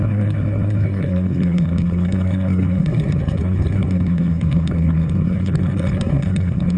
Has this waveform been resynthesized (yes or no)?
yes